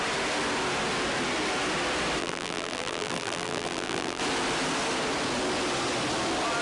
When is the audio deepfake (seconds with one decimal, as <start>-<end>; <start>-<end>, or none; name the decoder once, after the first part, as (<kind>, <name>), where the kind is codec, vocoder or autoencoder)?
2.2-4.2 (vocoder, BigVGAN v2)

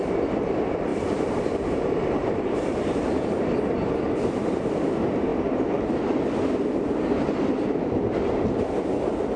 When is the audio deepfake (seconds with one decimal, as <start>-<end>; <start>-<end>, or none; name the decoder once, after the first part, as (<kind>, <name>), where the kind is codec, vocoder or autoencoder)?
0.9-3.3 (vocoder, BigVGAN v2)

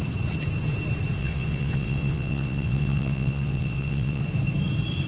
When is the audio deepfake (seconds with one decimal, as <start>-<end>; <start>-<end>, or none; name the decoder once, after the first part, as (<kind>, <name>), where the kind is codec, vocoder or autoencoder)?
1.2-4.2 (vocoder, WaveNeXt)

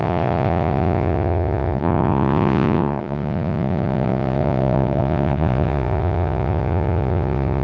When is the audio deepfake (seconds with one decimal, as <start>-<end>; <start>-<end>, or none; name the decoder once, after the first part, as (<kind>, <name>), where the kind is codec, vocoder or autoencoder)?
0.0-7.6 (vocoder, Vocos)

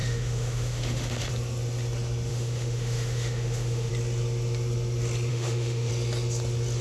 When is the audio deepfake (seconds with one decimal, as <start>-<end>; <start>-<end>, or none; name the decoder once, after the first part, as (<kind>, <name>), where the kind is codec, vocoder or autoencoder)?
0.0-1.3 (autoencoder, DAC-VAE); 2.3-3.9; 5.3-5.9

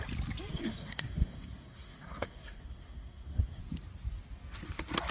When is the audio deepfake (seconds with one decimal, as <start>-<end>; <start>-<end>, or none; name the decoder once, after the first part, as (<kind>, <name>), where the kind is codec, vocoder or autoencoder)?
0.5-3.6 (codec, SNAC)

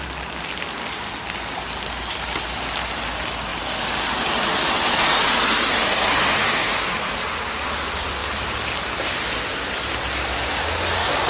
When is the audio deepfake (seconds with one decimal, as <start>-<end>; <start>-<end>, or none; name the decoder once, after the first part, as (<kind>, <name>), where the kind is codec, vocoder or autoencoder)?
6.4-7.2 (autoencoder, DAC-VAE)

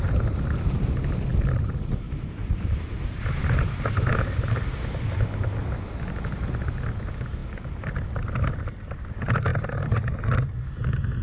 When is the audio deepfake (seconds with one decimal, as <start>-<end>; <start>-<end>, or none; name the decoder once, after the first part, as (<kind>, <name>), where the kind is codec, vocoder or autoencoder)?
1.3-4.1 (vocoder, BigVGAN v2)